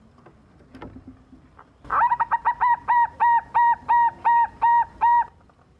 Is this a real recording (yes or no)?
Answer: yes